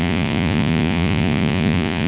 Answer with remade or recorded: remade